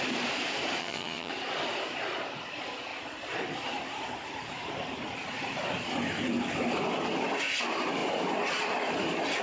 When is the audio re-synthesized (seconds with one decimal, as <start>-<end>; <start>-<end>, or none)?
0.8-1.3

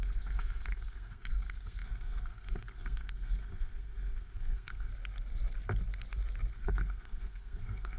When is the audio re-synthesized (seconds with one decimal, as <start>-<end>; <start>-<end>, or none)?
0.0-4.9; 6.5-8.0

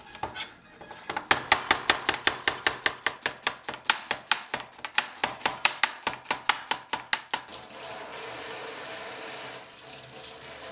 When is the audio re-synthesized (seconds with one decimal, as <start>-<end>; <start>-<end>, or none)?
5.2-5.8; 7.5-9.0

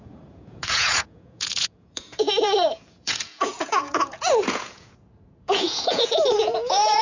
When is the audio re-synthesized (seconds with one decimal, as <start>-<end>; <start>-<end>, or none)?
0.0-7.0

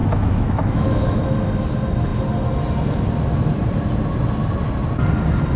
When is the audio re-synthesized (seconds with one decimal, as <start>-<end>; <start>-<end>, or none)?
0.0-1.2

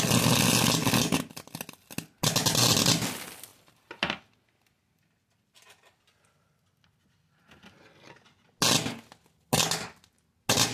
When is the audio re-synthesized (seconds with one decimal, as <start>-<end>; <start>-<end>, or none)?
none